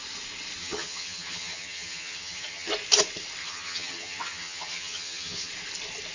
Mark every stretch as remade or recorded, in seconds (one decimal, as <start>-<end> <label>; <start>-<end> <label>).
0.0-0.6 recorded; 0.6-2.7 remade; 2.7-3.4 recorded; 3.4-5.5 remade; 5.5-6.1 recorded